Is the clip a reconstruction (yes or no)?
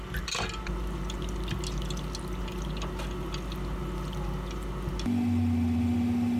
no